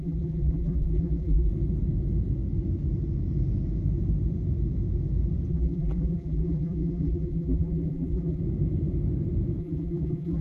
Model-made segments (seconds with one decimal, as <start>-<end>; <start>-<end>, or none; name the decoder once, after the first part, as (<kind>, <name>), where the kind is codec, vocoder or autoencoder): 0.0-1.5 (vocoder, BigVGAN v2); 5.5-8.4; 9.6-10.4